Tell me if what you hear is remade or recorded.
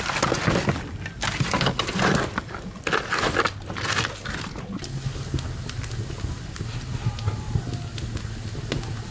recorded